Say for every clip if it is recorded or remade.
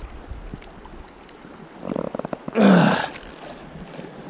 recorded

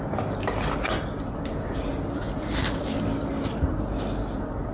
recorded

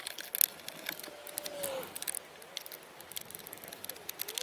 recorded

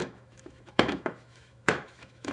remade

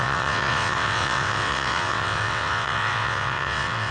remade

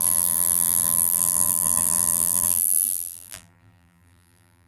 remade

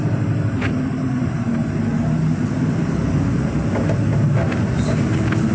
recorded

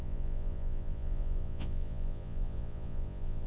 remade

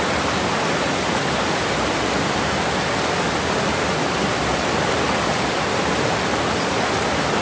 recorded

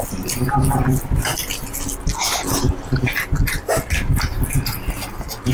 recorded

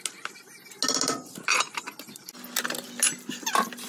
recorded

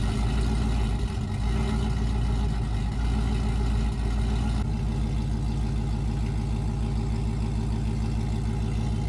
recorded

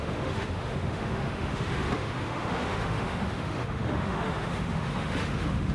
remade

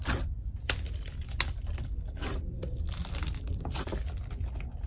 recorded